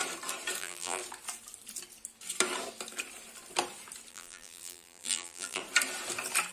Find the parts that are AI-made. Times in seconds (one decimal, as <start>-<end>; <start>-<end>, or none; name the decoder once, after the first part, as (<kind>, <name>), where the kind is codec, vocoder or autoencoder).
0.6-1.0 (vocoder, BigVGAN v2); 4.1-5.6